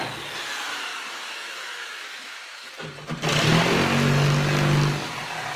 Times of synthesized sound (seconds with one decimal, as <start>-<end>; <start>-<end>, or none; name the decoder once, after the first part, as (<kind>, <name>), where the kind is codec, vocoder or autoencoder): 0.9-2.7 (autoencoder, DAC-VAE)